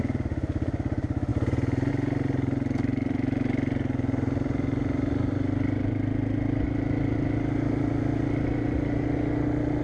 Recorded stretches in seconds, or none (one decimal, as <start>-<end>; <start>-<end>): 0.0-9.8